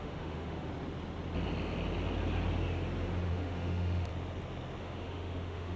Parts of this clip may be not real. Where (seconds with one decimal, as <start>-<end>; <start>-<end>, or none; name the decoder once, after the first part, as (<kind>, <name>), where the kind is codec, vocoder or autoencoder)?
0.0-0.7 (autoencoder, DAC-VAE); 3.3-4.1; 4.8-5.8